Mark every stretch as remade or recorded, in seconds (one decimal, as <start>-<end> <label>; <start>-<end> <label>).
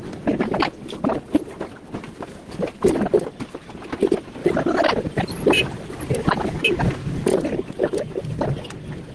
0.0-9.1 recorded